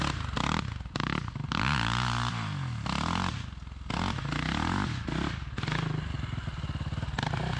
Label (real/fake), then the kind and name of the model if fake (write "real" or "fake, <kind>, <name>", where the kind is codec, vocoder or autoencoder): real